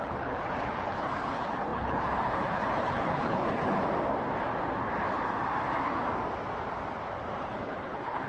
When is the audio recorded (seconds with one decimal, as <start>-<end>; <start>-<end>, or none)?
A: 3.8-7.4